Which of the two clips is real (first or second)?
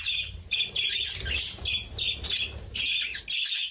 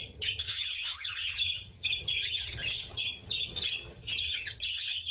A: first